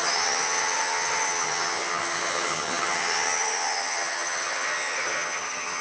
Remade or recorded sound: remade